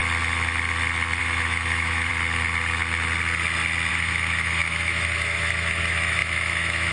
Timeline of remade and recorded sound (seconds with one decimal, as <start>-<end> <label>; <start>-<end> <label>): 0.0-1.2 recorded; 1.2-2.1 remade; 2.1-3.9 recorded; 3.9-6.9 remade